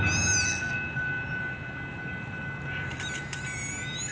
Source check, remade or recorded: recorded